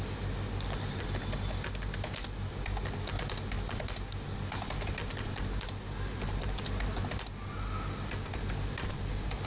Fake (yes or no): no